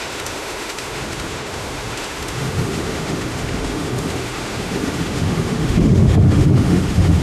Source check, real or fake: fake